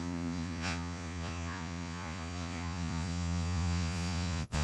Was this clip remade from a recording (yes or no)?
yes